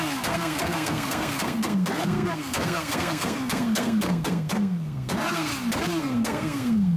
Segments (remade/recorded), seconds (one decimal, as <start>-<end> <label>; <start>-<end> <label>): 0.0-5.5 remade; 5.5-6.0 recorded; 6.0-7.0 remade